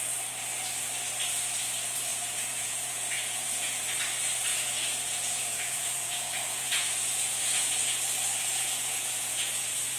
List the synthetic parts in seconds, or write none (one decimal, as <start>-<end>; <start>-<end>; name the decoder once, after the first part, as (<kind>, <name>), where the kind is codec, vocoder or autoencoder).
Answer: 2.1-3.8 (vocoder, Vocos); 4.5-7.7; 8.5-10.0